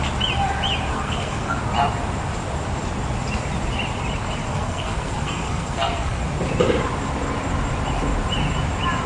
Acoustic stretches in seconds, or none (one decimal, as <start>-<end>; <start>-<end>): 0.0-0.9; 1.6-4.5; 6.2-9.1